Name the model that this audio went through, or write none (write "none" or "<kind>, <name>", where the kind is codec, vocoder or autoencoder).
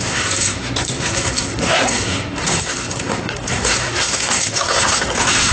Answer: codec, SNAC